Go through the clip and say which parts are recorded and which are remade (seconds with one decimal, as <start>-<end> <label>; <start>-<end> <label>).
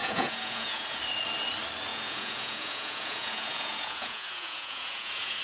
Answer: 0.0-1.0 remade; 1.0-1.9 recorded; 1.9-5.4 remade